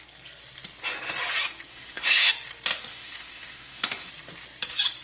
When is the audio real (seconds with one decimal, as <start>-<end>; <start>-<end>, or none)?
0.0-1.7; 2.3-2.9; 4.1-5.0

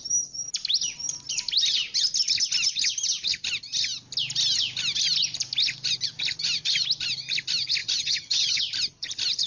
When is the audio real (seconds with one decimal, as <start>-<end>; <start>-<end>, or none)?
0.0-7.8; 8.6-9.5

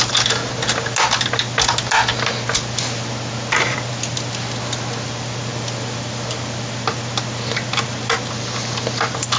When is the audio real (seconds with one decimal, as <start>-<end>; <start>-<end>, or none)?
0.0-9.4

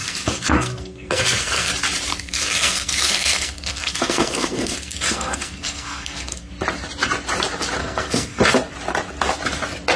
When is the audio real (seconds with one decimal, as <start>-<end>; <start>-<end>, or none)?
1.7-2.1; 6.5-7.8; 8.4-10.0